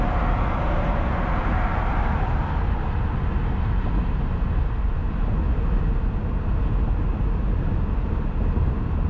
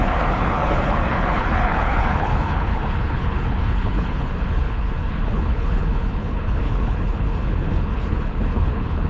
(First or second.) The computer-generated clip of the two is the second